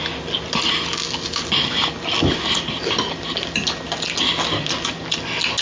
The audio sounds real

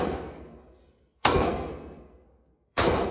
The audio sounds fake